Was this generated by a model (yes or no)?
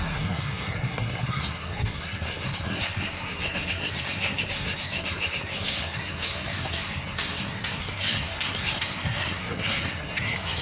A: yes